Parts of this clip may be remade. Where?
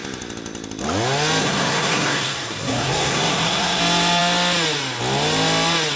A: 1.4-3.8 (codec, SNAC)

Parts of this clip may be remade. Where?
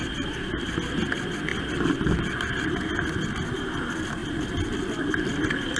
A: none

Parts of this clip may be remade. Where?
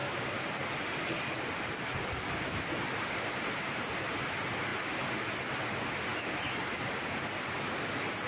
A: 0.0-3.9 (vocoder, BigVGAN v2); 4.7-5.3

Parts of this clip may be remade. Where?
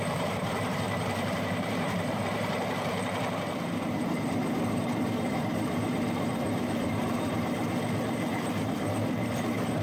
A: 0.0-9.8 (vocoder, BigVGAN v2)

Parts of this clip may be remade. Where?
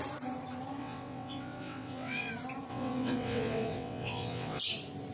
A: 0.8-2.3 (vocoder, WaveNeXt); 2.7-4.6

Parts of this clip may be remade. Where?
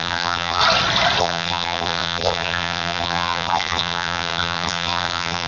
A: 0.0-0.6 (vocoder, BigVGAN v2); 1.2-5.5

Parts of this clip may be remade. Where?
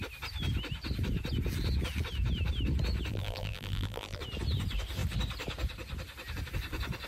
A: 3.1-4.2 (vocoder, BigVGAN v2)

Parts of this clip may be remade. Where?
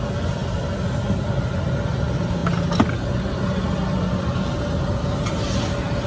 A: none